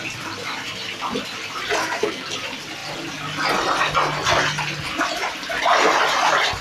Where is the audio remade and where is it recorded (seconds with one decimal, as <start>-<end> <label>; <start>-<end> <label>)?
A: 0.0-1.8 recorded; 1.8-2.3 remade; 2.3-6.6 recorded